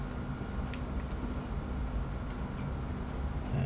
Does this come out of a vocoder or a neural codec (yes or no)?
no